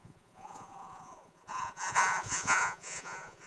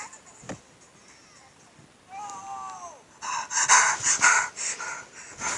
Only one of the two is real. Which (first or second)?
second